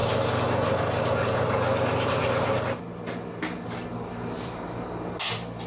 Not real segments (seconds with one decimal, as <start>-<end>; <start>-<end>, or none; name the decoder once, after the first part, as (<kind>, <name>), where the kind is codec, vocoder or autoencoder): none